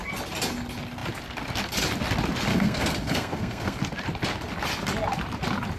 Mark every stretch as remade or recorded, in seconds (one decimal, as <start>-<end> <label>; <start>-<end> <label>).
0.0-2.5 recorded; 2.5-3.8 remade; 3.8-5.8 recorded